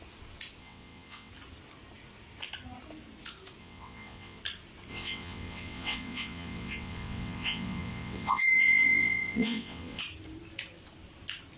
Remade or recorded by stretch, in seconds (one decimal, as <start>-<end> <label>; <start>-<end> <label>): 0.0-0.6 recorded; 0.6-1.3 remade; 1.3-3.6 recorded; 3.6-4.4 remade; 4.4-4.9 recorded; 4.9-10.0 remade; 10.0-11.6 recorded